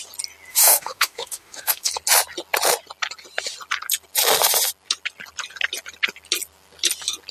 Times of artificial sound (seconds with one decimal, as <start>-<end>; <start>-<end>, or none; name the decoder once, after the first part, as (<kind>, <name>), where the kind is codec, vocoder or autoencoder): 0.5-1.9 (autoencoder, DAC-VAE)